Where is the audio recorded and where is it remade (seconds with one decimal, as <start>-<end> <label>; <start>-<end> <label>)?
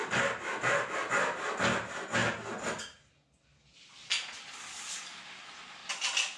0.0-6.4 recorded